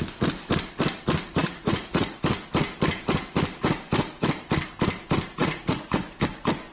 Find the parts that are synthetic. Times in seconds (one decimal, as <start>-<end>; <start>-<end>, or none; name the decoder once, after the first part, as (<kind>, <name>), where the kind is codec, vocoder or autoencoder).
1.4-2.2 (vocoder, Vocos); 5.4-6.0

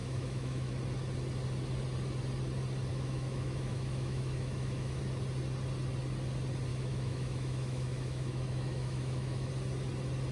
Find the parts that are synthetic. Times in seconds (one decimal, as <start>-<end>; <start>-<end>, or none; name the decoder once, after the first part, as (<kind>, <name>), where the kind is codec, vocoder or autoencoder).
0.0-0.7 (autoencoder, DAC-VAE); 2.9-5.0; 6.7-9.5

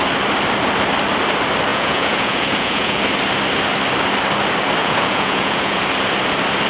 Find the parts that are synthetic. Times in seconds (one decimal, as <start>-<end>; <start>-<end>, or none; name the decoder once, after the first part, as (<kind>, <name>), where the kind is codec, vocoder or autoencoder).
1.7-3.0 (vocoder, Vocos); 4.8-5.8

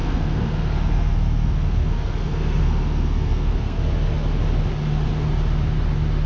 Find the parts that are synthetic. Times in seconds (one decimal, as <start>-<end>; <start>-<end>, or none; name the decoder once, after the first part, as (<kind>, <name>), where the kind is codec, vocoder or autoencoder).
0.0-3.8 (codec, SNAC)